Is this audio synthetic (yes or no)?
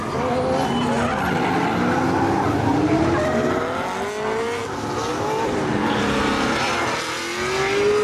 no